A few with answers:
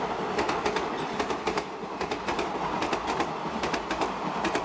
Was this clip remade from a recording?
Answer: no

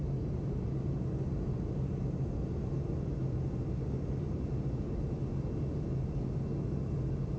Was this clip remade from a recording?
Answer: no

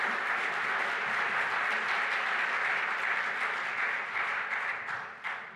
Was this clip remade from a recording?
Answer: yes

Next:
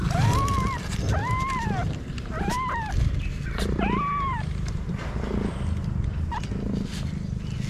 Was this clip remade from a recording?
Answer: no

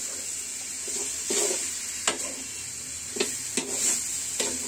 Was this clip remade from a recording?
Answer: no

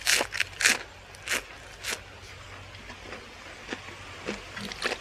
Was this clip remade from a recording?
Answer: no